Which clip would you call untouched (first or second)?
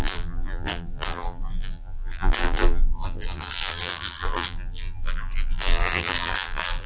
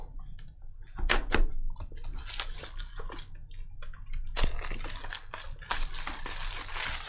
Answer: second